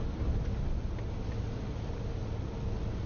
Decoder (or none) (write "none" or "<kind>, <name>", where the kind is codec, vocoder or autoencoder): none